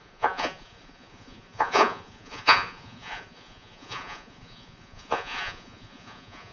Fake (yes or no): yes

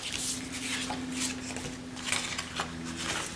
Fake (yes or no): no